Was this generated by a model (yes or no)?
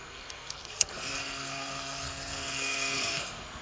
yes